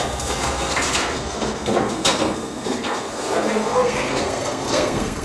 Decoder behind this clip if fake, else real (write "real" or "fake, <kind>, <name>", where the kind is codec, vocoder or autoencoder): fake, codec, SNAC